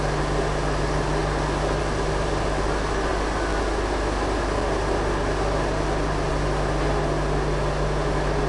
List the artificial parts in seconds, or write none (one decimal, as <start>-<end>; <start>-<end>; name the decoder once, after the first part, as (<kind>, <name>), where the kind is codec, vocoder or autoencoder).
none